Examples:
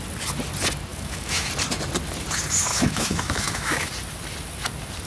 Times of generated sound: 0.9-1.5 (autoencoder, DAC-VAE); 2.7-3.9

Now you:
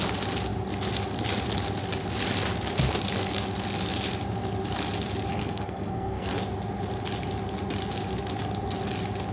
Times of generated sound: 5.3-6.4 (codec, SNAC)

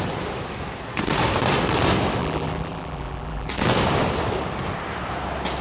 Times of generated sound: 2.2-3.5 (vocoder, BigVGAN v2)

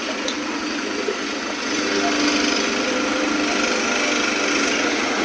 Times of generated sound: 0.0-1.9 (vocoder, Vocos); 4.5-5.2

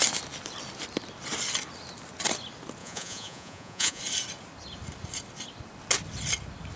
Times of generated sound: 2.8-4.0 (vocoder, Vocos)

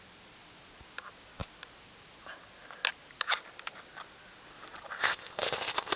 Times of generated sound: 5.0-6.0 (codec, ZipCodec)